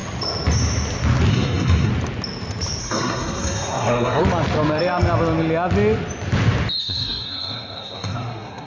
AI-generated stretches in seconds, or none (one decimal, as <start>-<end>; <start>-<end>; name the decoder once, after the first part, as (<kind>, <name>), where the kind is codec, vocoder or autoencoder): 1.3-1.9 (codec, SNAC); 2.8-4.2; 6.8-8.7